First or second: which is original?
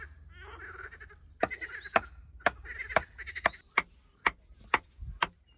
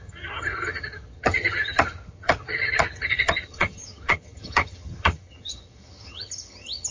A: first